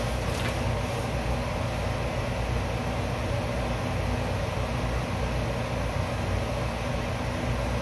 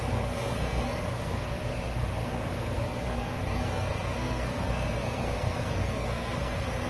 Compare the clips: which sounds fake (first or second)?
second